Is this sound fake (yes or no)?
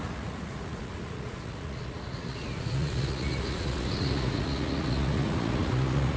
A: yes